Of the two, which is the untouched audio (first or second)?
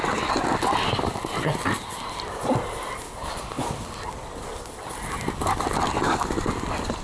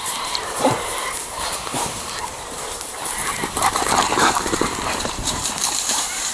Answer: first